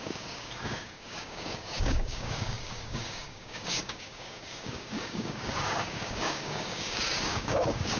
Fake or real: fake